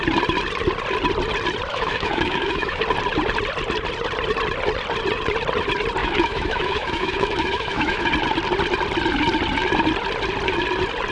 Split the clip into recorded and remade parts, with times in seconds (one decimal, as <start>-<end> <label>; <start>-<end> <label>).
0.0-1.7 recorded; 1.7-2.8 remade; 2.8-6.0 recorded; 6.0-8.1 remade; 8.1-11.1 recorded